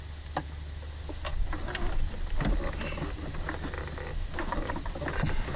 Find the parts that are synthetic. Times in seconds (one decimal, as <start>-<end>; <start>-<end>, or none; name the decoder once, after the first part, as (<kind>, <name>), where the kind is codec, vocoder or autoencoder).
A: none